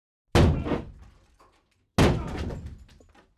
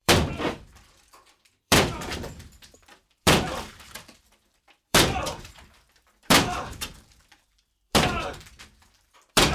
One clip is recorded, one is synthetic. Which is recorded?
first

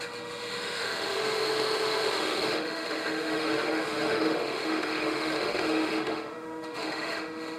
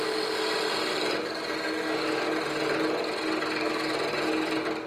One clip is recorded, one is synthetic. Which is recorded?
second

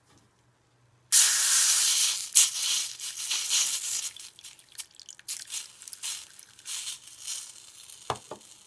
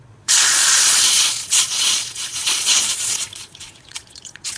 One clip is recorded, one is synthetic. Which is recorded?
first